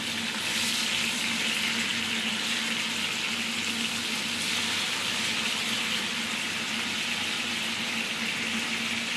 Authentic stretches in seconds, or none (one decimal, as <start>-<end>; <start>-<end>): 0.0-9.2